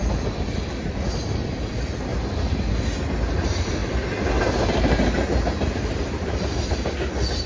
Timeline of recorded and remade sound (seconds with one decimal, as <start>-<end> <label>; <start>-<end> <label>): 0.0-7.5 recorded